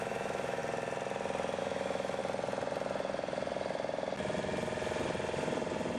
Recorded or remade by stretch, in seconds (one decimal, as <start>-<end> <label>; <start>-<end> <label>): 0.0-0.6 remade; 0.6-1.6 recorded; 1.6-2.2 remade; 2.2-6.0 recorded